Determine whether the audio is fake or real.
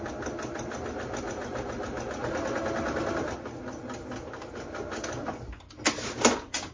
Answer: real